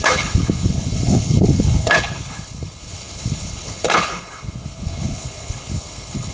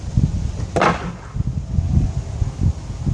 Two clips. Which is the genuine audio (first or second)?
second